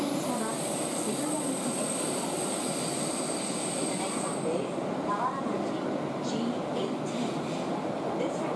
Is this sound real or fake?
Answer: real